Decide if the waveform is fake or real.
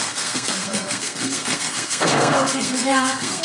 fake